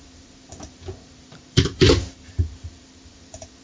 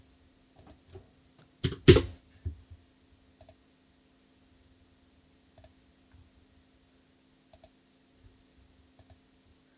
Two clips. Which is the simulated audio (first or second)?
first